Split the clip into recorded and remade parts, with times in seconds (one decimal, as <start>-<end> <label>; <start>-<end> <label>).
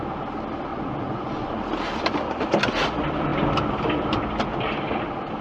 0.0-0.7 recorded; 0.7-1.6 remade; 1.6-5.4 recorded